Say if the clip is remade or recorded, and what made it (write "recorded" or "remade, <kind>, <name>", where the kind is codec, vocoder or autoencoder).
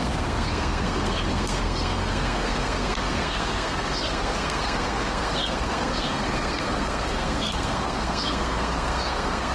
remade, codec, SNAC